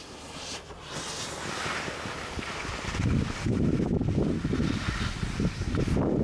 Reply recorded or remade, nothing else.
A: recorded